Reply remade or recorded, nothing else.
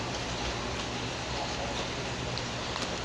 recorded